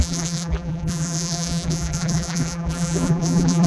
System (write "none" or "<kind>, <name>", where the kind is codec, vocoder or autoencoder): vocoder, BigVGAN v2